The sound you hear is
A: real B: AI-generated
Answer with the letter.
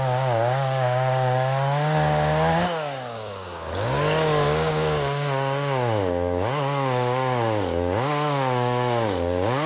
B